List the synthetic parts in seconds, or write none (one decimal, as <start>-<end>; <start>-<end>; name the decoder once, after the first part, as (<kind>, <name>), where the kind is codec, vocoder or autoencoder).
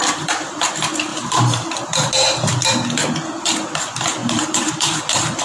0.0-0.6 (vocoder, BigVGAN v2); 1.1-2.1; 4.2-5.0